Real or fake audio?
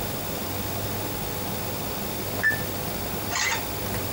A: real